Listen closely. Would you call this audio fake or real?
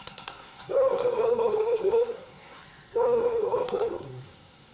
fake